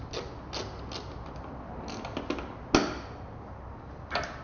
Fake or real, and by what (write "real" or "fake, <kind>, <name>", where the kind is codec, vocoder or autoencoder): real